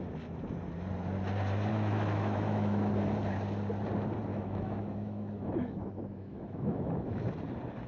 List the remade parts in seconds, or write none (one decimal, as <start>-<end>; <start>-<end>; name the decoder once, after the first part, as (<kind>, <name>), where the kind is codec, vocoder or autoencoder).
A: 1.7-2.9 (autoencoder, DAC-VAE); 4.3-7.3